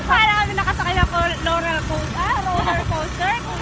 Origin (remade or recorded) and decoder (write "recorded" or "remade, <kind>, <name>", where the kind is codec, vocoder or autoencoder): recorded